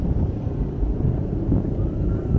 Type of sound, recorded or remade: recorded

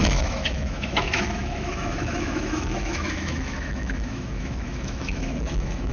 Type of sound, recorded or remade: remade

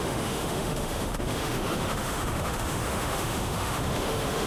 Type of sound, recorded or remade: remade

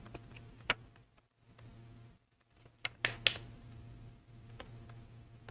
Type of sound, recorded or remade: recorded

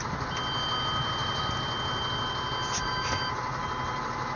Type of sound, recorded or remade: recorded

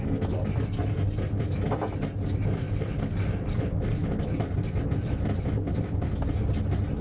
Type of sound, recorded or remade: recorded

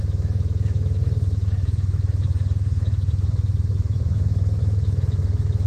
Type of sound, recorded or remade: remade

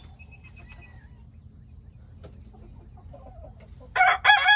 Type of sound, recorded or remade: recorded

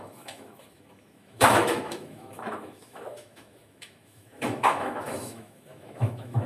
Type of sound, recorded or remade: remade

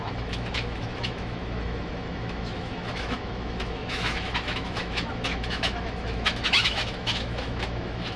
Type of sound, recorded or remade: remade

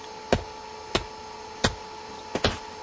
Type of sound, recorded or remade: recorded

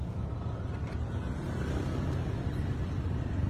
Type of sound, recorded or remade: recorded